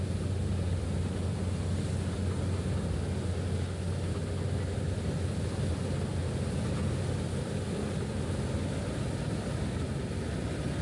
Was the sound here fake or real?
real